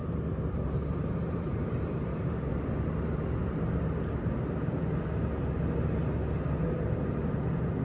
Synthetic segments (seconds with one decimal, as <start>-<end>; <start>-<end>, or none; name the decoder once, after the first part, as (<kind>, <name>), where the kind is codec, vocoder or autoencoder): 0.0-2.4 (vocoder, BigVGAN v2)